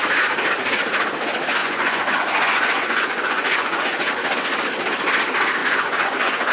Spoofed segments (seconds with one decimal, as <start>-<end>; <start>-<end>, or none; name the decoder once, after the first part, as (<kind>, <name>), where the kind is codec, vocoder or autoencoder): 1.6-4.1 (vocoder, Vocos); 5.6-6.5